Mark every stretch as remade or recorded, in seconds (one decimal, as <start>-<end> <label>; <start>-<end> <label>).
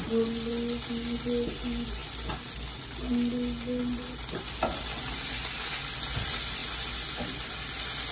0.0-8.1 recorded